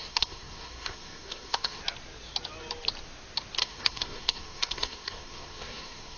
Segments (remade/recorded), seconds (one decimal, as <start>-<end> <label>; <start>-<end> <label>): 0.0-1.8 remade; 1.8-3.6 recorded; 3.6-6.2 remade